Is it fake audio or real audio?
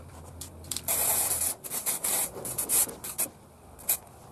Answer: real